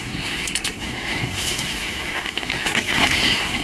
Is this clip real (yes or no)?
no